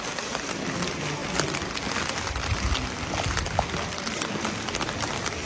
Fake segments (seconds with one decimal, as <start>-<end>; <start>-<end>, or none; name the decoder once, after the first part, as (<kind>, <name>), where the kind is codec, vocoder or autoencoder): none